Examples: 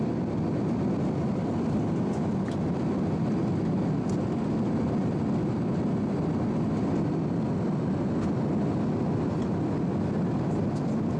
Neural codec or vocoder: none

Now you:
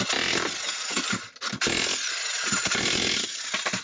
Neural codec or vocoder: none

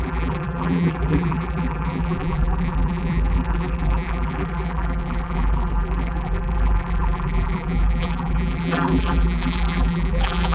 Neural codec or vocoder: vocoder, BigVGAN v2